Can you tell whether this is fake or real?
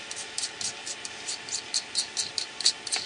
real